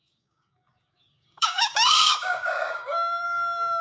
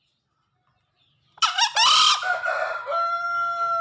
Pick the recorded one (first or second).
second